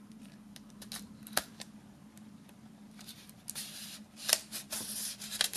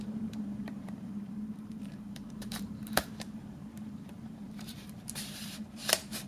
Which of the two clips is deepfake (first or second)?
second